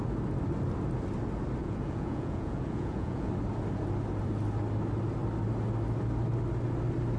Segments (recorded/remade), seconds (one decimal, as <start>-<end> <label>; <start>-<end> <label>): 0.0-1.6 recorded; 1.6-3.3 remade; 3.3-7.2 recorded